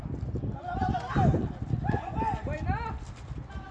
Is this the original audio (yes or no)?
yes